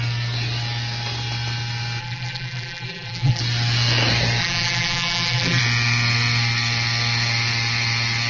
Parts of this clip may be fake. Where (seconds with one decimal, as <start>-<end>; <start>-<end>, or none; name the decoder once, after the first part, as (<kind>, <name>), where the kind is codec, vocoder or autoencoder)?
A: 2.0-3.4 (vocoder, BigVGAN v2); 4.4-5.6